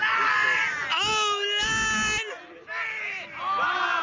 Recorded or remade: recorded